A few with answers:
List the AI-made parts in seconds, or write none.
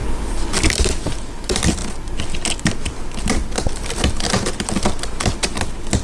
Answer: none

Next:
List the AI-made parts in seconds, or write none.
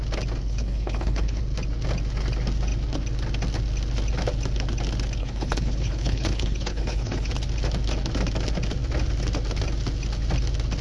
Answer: 0.4-1.4; 5.2-7.3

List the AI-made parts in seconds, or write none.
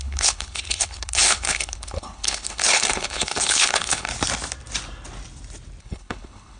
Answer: 0.0-4.1; 5.8-6.6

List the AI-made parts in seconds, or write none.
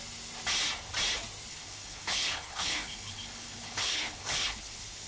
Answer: 1.5-5.1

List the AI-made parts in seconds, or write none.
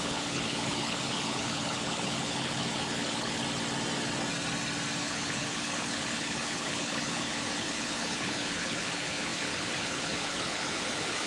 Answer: 0.0-3.4; 5.0-11.3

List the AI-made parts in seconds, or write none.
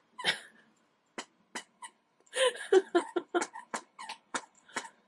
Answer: 1.6-5.1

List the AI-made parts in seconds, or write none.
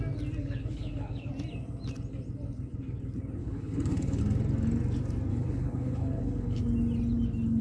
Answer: 0.4-1.3; 3.4-4.2; 5.3-6.6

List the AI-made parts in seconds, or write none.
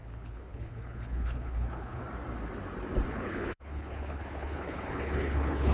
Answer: 0.0-2.0; 3.1-5.7